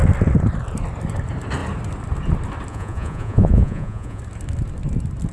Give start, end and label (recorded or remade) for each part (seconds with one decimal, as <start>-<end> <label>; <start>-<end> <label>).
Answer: 0.0-2.7 recorded; 2.7-4.2 remade; 4.2-5.3 recorded